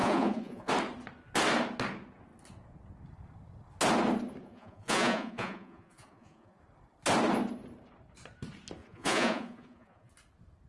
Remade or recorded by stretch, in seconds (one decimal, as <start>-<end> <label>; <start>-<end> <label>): 0.0-0.7 remade; 0.7-4.4 recorded; 4.4-6.6 remade; 6.6-8.8 recorded; 8.8-10.1 remade; 10.1-10.7 recorded